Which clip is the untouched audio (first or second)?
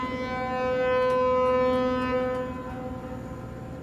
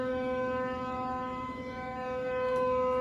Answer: first